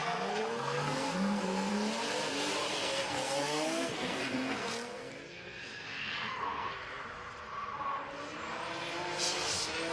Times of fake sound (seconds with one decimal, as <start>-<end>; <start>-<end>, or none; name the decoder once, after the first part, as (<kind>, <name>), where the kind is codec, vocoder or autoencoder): 0.0-1.7 (codec, SNAC); 2.7-6.7